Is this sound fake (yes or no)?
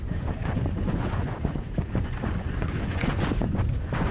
yes